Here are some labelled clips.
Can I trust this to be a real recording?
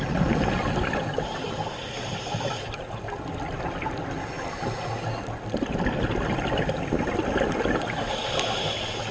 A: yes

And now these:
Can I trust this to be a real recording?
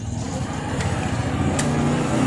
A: yes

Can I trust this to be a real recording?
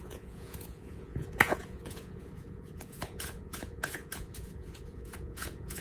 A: no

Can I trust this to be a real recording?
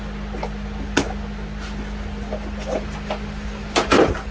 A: yes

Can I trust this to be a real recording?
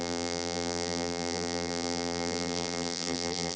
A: no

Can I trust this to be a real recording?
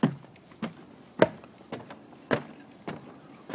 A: yes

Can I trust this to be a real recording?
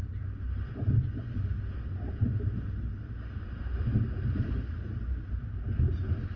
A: yes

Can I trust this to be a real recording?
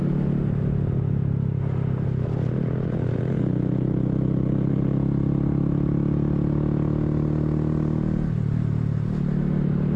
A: yes